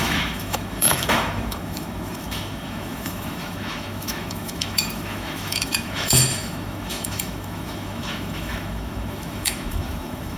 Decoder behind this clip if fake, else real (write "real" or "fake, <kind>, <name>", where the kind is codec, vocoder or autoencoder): fake, autoencoder, DAC-VAE